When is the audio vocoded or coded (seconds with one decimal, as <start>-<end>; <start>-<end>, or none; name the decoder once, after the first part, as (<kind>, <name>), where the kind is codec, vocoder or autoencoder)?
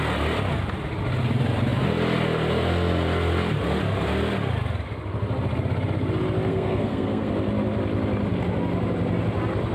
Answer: 6.5-7.3 (codec, SNAC)